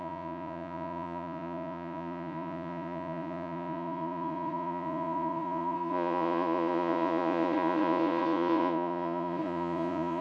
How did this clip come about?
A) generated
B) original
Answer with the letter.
A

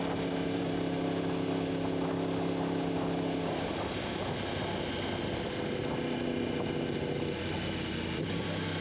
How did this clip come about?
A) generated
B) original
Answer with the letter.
B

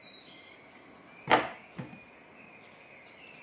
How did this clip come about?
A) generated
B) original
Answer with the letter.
B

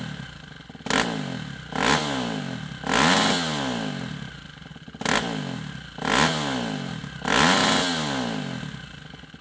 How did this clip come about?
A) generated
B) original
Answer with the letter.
B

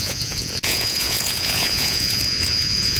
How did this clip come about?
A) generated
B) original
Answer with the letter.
A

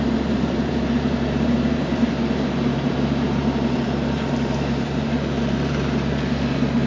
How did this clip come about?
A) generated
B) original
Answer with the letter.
A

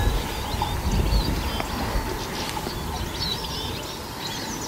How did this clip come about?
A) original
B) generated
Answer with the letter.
A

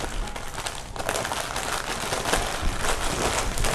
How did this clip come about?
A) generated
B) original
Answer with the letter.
B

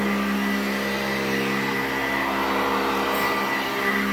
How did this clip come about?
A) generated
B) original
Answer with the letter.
B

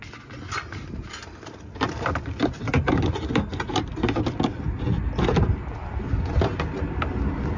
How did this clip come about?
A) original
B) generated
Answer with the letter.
A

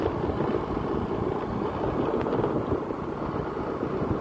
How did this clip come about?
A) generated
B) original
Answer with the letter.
B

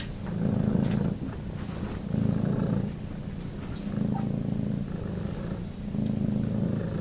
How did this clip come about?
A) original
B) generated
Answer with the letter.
A